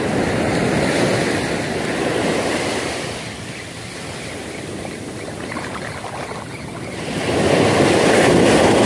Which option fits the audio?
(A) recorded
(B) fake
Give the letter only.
A